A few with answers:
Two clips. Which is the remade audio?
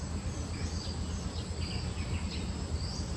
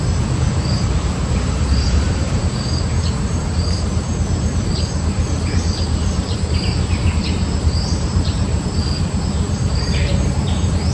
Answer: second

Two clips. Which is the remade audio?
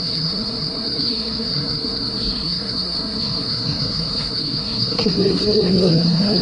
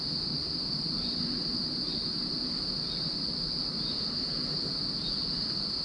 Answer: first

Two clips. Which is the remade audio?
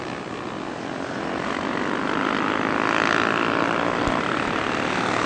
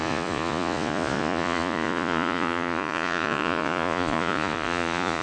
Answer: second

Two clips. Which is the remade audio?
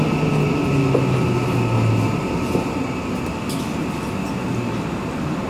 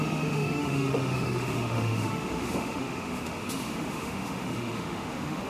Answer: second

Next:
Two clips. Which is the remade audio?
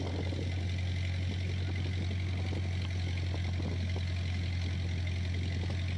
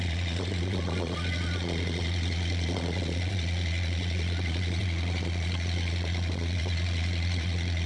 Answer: second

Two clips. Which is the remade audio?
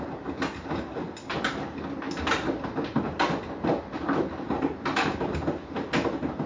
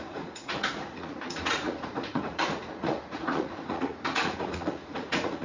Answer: second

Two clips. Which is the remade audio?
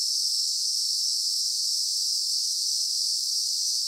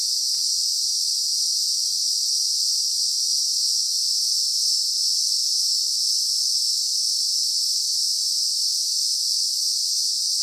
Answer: first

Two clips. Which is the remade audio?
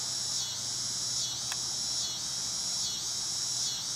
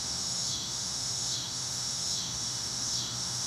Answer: second